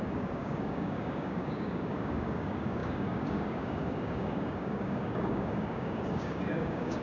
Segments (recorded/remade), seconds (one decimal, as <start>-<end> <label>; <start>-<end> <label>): 0.0-7.0 remade